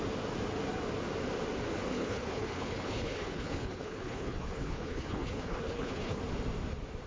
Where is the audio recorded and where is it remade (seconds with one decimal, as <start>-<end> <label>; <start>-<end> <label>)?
0.0-1.9 recorded; 1.9-6.2 remade; 6.2-7.1 recorded